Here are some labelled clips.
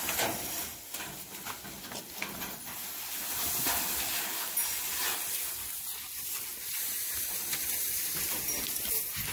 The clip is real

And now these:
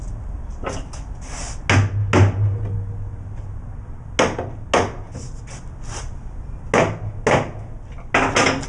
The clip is real